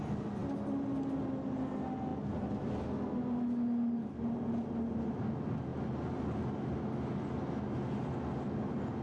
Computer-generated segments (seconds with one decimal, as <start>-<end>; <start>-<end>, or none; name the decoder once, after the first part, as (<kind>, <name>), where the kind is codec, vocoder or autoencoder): none